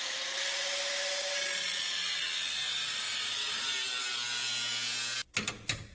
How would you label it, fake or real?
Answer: real